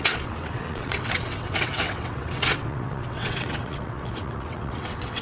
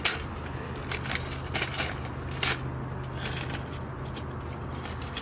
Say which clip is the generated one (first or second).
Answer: first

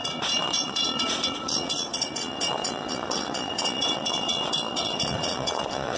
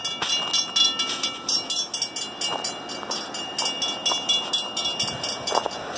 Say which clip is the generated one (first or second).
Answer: first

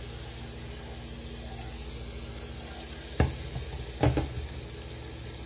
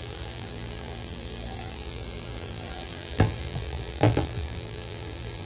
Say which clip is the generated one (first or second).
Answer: second